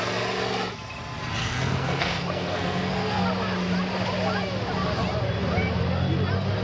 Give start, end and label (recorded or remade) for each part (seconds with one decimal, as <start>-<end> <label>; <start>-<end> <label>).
0.0-1.4 recorded; 1.4-3.2 remade; 3.2-6.6 recorded